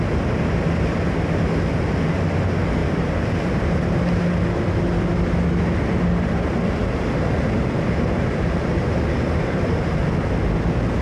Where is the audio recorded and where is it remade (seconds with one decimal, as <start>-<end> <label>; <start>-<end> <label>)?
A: 0.0-2.8 recorded; 2.8-3.6 remade; 3.6-6.8 recorded; 6.8-10.0 remade; 10.0-11.0 recorded